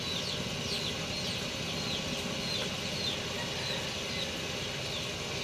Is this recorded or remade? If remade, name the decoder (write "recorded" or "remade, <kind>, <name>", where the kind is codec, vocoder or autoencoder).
recorded